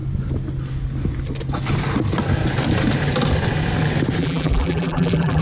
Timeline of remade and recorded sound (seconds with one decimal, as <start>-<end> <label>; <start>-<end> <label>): 0.0-4.2 recorded; 4.2-5.4 remade